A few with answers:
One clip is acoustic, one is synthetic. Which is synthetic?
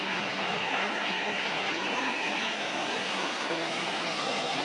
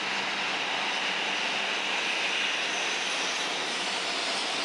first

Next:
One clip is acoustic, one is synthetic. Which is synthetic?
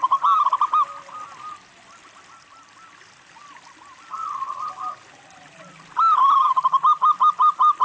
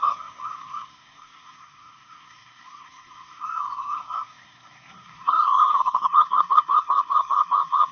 second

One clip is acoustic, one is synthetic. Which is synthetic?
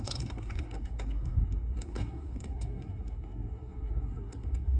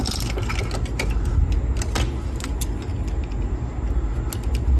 first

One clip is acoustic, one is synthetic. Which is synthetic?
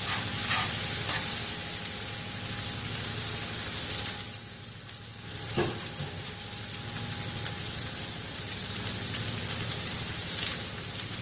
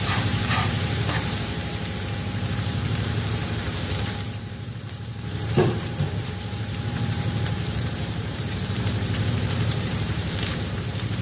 second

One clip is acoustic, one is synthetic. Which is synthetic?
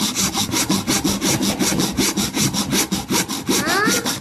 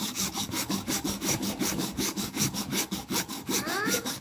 second